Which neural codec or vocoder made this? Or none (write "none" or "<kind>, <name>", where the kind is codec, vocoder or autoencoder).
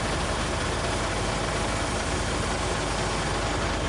none